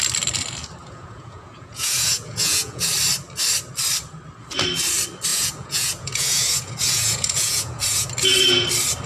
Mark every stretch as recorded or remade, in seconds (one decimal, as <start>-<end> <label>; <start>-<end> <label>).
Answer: 0.0-0.8 recorded; 0.8-2.8 remade; 2.8-5.3 recorded; 5.3-8.1 remade; 8.1-9.1 recorded